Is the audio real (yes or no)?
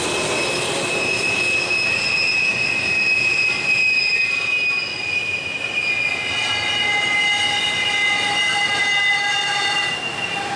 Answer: yes